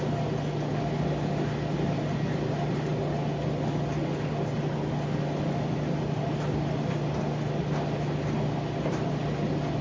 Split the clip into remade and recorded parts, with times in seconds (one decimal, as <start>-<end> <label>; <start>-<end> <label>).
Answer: 0.0-9.8 recorded